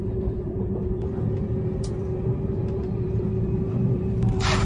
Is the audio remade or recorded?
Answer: remade